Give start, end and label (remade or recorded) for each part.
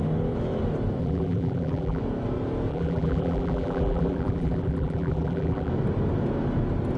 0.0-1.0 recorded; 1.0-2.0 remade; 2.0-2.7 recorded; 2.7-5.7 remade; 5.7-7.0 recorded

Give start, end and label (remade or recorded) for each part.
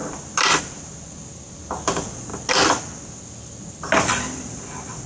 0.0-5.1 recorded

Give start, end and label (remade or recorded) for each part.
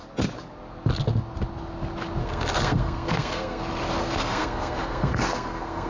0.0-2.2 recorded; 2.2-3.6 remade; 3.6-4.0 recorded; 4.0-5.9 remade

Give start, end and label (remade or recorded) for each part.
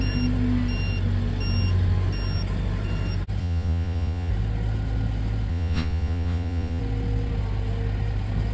0.0-3.4 recorded; 3.4-4.3 remade; 4.3-5.5 recorded; 5.5-6.8 remade; 6.8-8.5 recorded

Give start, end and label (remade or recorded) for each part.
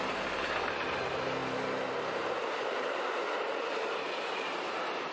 0.0-5.1 recorded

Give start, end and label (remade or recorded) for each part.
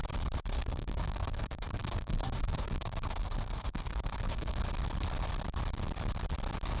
0.0-0.5 recorded; 0.5-4.6 remade; 4.6-6.8 recorded